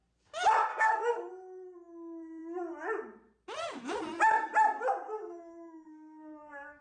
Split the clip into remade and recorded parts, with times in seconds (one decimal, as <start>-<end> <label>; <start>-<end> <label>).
0.0-0.7 recorded; 0.7-1.3 remade; 1.3-5.2 recorded; 5.2-6.8 remade